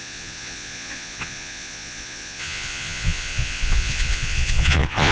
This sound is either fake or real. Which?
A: fake